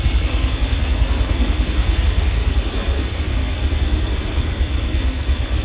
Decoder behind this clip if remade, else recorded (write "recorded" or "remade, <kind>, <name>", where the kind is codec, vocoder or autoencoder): remade, codec, SNAC